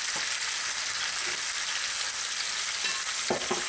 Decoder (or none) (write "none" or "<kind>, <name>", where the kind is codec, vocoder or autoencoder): none